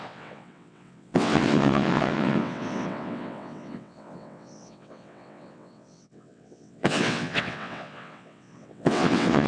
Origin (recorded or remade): remade